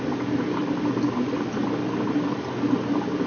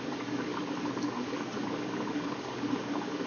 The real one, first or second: first